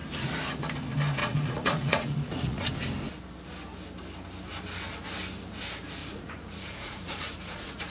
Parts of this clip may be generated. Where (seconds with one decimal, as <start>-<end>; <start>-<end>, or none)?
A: 1.2-2.7; 6.0-7.9